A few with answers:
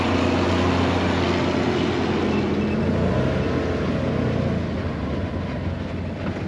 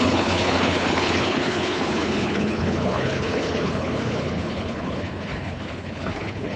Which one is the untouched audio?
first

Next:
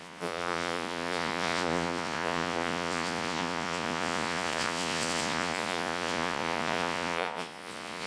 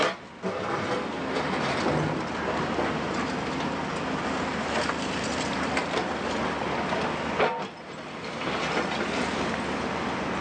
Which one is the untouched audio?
second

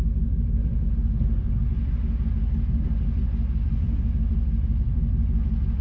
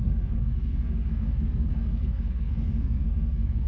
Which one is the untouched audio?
first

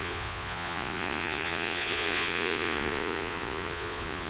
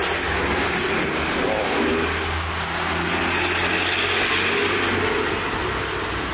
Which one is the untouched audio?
second